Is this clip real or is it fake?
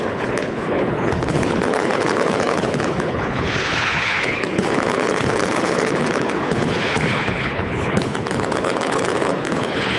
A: fake